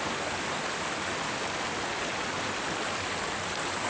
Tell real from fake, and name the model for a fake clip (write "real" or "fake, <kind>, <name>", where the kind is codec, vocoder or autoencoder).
real